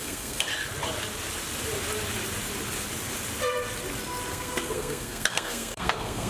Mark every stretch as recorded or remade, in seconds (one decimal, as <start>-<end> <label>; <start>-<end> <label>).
0.0-0.5 remade; 0.5-4.3 recorded; 4.3-6.3 remade